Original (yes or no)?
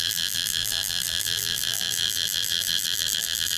no